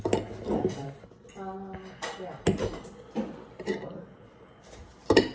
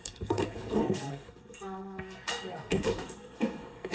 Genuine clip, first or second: first